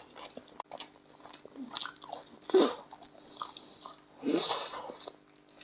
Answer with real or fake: real